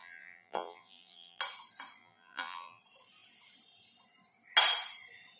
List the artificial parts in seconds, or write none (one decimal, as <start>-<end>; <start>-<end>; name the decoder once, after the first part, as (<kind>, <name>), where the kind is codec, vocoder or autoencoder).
0.0-1.4 (vocoder, BigVGAN v2); 2.0-2.8